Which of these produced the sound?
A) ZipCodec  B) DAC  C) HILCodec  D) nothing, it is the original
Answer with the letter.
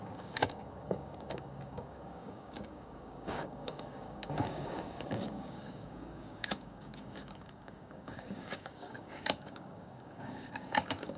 B